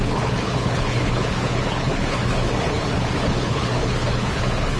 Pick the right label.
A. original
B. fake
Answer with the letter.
B